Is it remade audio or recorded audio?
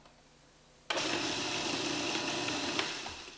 recorded